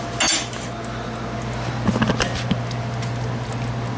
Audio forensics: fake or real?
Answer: real